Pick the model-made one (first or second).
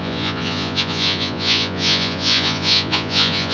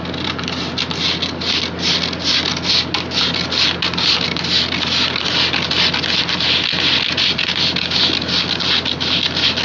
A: first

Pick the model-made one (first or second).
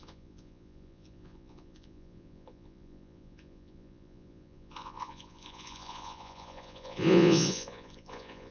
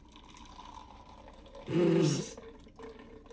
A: first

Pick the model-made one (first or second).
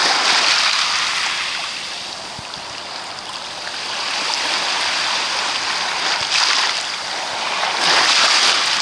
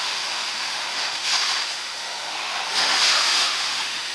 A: second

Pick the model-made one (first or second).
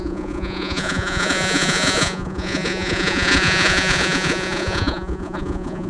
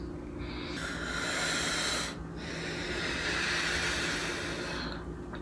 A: first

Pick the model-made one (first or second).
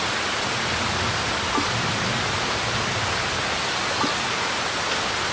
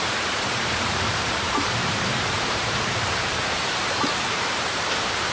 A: second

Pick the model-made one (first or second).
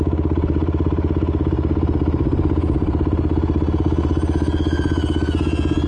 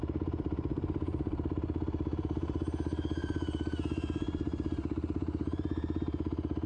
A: second